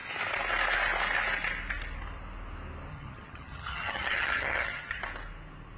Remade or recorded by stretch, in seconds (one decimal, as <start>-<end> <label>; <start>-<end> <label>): 0.0-2.9 recorded; 2.9-5.0 remade; 5.0-5.8 recorded